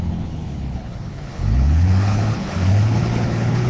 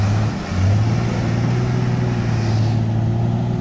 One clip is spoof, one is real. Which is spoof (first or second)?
first